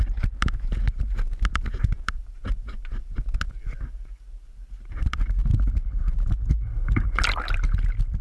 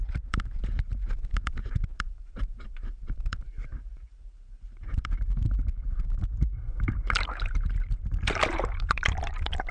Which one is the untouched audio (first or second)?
first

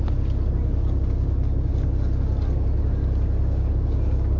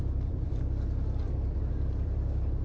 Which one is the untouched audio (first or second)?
first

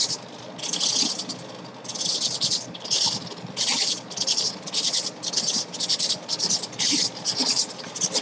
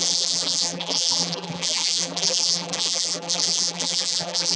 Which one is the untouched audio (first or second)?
first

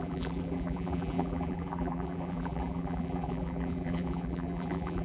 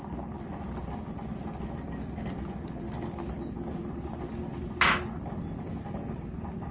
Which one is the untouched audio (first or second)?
second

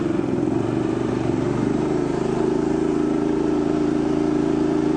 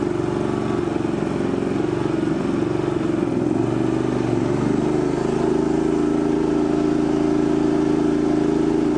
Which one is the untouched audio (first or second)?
second